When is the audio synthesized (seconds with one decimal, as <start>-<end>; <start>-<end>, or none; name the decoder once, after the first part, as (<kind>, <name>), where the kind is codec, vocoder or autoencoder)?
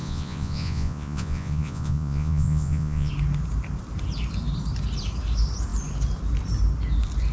0.0-3.1 (vocoder, Vocos)